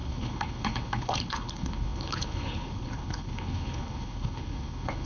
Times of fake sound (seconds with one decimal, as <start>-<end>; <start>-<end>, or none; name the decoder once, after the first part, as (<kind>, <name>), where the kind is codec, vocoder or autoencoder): 0.0-5.1 (codec, HILCodec)